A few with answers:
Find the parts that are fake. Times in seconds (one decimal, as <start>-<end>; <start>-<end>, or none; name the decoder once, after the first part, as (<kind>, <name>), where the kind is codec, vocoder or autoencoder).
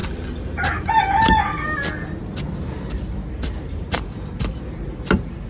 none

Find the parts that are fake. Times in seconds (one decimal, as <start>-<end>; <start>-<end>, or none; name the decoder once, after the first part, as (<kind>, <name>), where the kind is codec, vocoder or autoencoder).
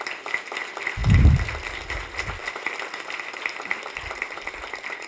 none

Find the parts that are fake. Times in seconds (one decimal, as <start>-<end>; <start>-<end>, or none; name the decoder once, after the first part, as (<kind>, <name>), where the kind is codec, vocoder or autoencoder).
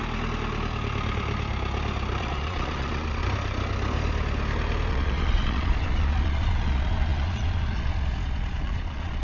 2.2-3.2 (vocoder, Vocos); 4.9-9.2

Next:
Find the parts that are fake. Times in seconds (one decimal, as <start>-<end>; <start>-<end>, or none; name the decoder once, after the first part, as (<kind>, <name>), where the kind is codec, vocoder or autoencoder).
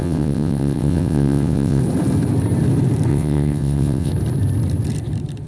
0.0-1.8 (vocoder, WaveNeXt); 3.1-4.1